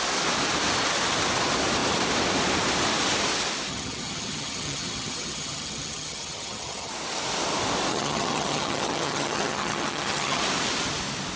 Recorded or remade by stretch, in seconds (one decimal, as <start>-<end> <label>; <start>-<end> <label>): 0.0-3.7 recorded; 3.7-6.9 remade; 6.9-7.9 recorded; 7.9-10.4 remade; 10.4-11.4 recorded